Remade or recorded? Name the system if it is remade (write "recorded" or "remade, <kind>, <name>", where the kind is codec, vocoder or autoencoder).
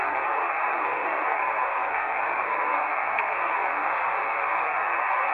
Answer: remade, codec, SNAC